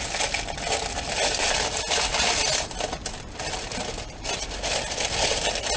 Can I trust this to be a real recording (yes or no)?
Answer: yes